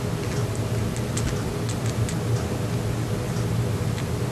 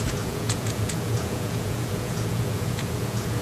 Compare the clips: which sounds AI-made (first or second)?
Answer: second